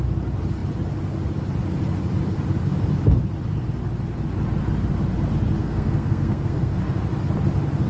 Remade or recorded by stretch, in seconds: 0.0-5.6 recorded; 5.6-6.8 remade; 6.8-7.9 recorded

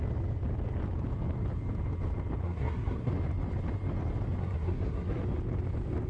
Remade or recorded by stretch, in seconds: 0.0-2.4 recorded; 2.4-3.1 remade; 3.1-4.4 recorded; 4.4-5.2 remade; 5.2-6.1 recorded

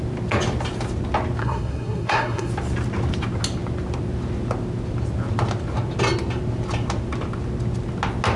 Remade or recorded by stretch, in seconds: 0.0-1.4 recorded; 1.4-2.5 remade; 2.5-8.4 recorded

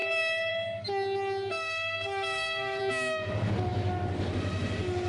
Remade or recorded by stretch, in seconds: 0.0-1.5 recorded; 1.5-2.8 remade; 2.8-5.1 recorded

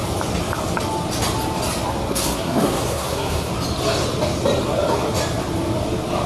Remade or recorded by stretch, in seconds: 0.0-2.1 recorded; 2.1-3.5 remade; 3.5-6.3 recorded